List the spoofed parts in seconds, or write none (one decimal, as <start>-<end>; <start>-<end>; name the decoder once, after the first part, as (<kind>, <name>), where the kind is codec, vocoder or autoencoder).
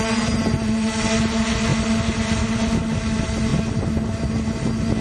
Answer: none